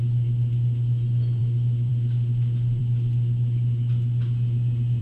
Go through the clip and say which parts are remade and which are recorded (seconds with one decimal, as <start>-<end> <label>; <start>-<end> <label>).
0.0-5.0 recorded